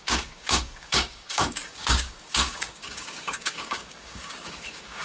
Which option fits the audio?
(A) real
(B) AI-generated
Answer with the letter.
B